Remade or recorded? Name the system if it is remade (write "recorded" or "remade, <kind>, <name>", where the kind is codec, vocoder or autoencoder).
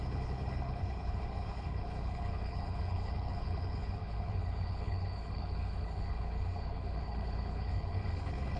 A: remade, codec, HILCodec